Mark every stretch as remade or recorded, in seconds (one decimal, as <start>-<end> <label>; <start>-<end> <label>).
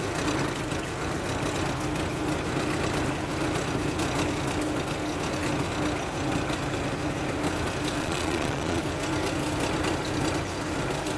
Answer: 0.0-8.0 recorded; 8.0-8.8 remade; 8.8-11.2 recorded